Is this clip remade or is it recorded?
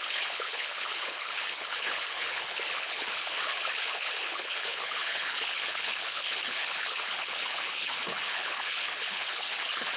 remade